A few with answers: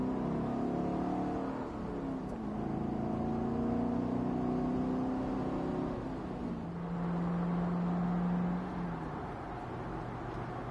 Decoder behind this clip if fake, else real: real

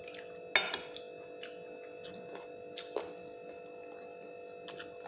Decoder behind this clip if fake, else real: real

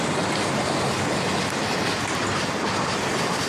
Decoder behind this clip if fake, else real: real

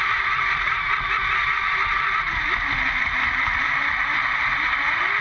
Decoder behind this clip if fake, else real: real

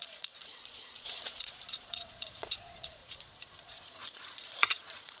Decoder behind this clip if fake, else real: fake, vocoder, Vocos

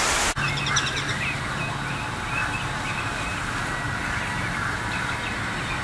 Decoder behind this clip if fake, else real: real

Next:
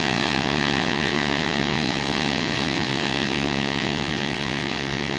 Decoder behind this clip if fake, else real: fake, vocoder, WaveNeXt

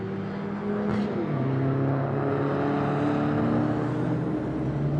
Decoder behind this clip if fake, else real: real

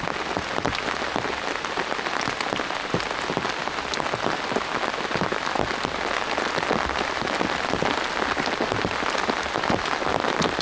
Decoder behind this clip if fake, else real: real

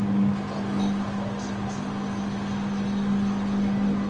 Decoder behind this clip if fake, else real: real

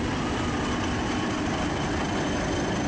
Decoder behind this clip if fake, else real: real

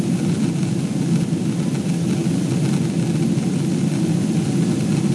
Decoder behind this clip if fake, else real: real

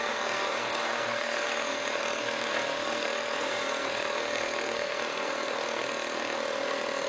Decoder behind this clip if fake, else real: fake, codec, SNAC